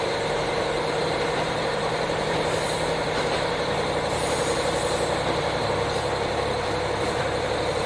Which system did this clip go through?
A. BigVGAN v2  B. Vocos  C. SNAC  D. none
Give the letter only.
A